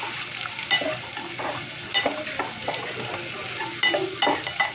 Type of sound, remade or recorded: recorded